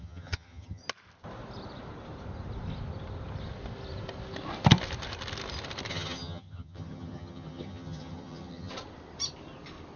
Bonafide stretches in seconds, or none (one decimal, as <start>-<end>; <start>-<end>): 0.8-5.9; 8.7-10.0